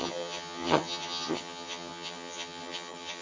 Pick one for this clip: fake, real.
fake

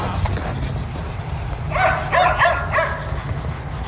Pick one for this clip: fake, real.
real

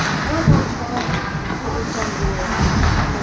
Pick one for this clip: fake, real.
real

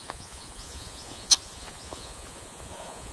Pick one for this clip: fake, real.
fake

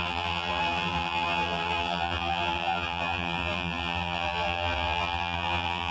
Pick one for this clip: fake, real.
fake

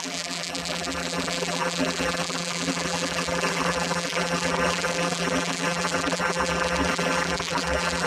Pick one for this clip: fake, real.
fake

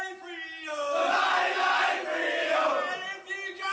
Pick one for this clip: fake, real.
real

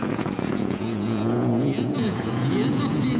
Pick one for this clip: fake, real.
fake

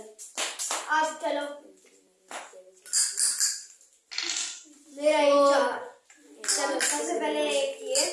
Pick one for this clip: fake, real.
real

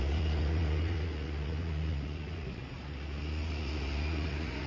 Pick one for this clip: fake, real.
fake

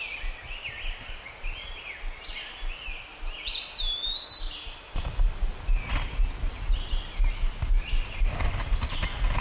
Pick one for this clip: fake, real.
real